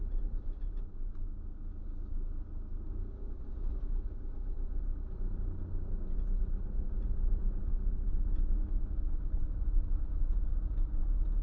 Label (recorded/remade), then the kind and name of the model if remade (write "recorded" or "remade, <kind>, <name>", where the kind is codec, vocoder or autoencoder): recorded